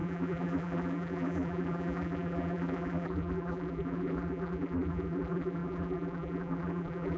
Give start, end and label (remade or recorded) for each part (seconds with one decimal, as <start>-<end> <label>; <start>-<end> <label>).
0.0-7.2 remade